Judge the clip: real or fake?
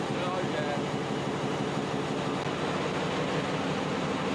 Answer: real